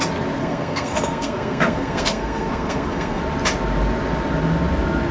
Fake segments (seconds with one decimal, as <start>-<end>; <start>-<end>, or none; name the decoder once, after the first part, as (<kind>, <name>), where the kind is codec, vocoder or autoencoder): 0.4-3.2 (codec, SNAC)